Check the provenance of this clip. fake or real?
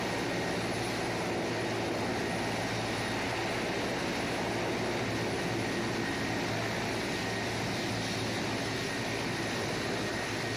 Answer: real